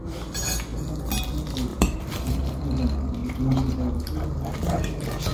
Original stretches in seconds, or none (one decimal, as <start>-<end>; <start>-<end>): 0.0-1.7; 2.6-5.3